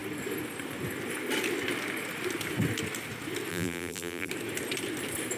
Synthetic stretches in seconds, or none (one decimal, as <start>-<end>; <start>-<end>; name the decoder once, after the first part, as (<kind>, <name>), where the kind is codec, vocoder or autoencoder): 3.5-4.3 (vocoder, BigVGAN v2)